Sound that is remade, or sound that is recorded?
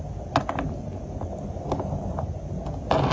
recorded